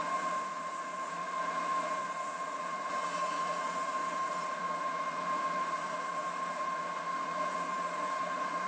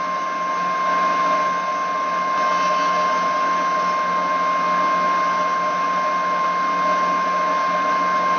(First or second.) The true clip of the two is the second